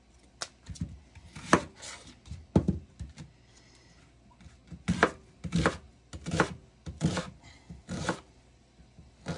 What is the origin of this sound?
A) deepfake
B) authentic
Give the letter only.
B